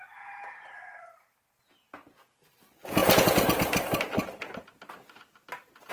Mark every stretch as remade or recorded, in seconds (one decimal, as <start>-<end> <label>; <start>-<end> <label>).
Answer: 0.0-5.9 recorded